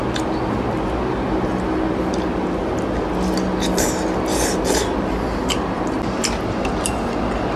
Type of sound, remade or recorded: recorded